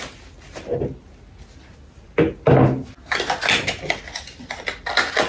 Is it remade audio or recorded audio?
recorded